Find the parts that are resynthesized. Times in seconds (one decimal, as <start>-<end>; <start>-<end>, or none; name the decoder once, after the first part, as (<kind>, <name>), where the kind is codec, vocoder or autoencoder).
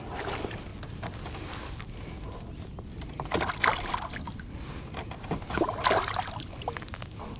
none